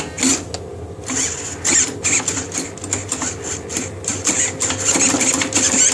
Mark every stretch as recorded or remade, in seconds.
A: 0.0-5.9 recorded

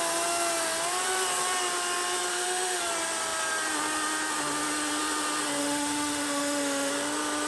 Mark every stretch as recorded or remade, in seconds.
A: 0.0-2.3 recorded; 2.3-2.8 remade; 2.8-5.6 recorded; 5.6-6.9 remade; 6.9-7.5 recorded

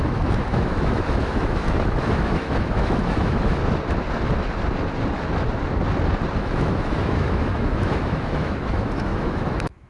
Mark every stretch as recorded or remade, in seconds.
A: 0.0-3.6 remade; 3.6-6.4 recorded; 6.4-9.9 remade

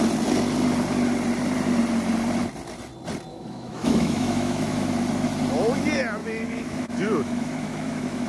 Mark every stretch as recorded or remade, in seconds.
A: 0.0-3.3 recorded; 3.3-4.9 remade; 4.9-6.2 recorded; 6.2-8.3 remade